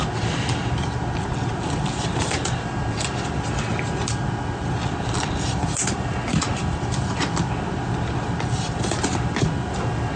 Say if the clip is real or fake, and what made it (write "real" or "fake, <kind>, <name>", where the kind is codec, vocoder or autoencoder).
real